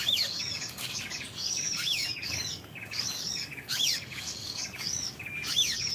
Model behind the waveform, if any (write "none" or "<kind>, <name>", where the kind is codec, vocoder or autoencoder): codec, DAC